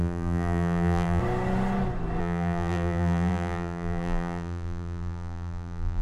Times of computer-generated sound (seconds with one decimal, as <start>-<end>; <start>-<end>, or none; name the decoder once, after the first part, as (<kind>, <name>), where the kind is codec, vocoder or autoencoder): 0.0-1.2 (vocoder, BigVGAN v2); 2.2-6.0